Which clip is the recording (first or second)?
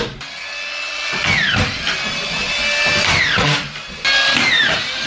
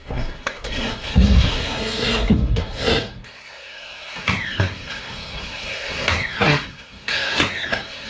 first